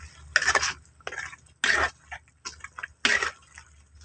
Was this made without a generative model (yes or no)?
yes